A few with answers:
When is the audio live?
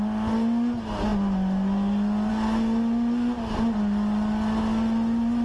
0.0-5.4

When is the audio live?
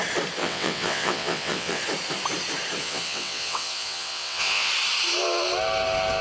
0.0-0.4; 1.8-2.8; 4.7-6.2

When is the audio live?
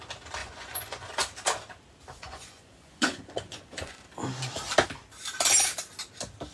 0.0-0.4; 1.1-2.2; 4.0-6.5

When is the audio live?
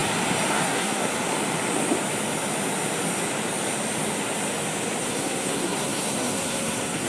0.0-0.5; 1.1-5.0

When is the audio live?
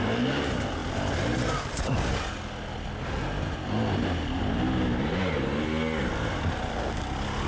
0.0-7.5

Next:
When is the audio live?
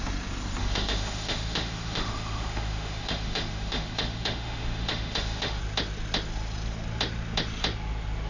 0.0-0.6; 5.6-8.3